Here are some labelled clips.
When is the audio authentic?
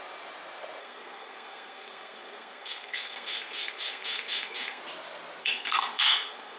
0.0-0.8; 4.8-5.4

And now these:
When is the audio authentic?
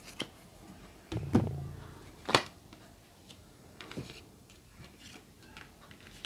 0.0-0.5; 1.2-2.0; 2.6-3.2; 5.0-6.3